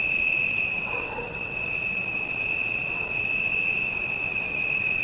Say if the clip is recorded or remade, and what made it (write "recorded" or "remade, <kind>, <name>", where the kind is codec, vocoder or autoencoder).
remade, vocoder, WaveNeXt